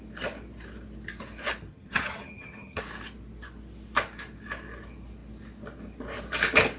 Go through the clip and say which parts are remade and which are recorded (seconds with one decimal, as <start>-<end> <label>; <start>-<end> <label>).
0.0-1.7 recorded; 1.7-2.8 remade; 2.8-6.8 recorded